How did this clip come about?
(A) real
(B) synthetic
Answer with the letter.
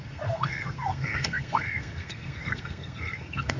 B